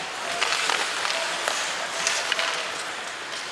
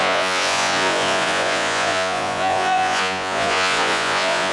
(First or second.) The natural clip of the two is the first